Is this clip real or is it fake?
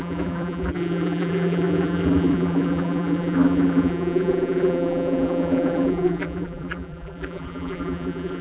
fake